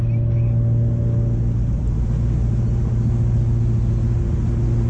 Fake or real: real